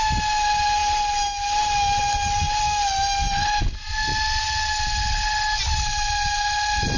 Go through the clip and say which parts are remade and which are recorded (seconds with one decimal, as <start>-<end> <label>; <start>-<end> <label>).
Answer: 0.0-7.0 recorded